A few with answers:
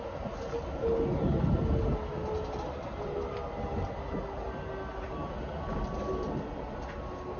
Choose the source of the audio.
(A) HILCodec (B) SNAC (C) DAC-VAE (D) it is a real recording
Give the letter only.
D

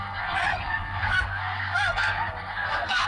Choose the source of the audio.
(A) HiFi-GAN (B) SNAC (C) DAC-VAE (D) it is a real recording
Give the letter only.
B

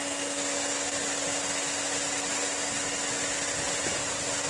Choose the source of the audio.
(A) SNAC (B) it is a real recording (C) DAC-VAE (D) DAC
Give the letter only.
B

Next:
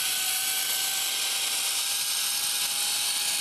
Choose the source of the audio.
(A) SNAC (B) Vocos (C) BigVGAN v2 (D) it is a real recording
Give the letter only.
D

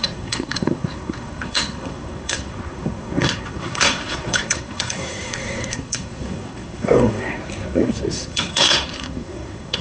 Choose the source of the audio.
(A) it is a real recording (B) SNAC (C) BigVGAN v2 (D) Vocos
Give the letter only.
B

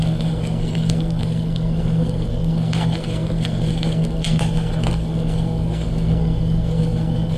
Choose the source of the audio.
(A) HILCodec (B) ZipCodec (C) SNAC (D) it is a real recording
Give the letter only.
C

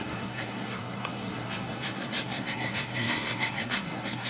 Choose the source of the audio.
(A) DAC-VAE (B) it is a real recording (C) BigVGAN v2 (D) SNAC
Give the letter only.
D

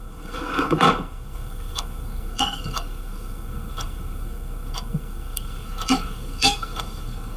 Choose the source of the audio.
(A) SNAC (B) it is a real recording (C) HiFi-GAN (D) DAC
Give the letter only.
A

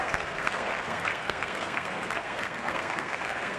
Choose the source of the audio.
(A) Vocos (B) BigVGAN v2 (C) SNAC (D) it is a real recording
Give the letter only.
C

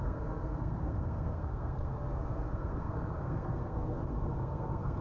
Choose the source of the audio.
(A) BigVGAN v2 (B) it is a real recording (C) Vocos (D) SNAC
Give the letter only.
D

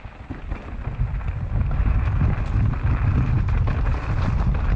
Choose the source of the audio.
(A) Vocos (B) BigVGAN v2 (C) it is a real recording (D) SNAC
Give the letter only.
C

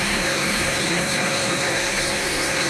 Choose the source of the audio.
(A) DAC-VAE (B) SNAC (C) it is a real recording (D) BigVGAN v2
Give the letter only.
B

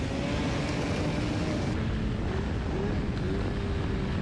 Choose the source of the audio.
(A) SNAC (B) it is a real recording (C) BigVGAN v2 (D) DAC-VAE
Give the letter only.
B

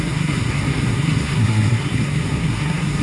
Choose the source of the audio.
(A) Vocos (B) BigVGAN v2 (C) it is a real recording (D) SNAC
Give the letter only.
D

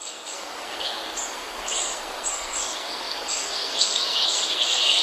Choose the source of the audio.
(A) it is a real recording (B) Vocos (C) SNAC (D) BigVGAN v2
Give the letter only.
C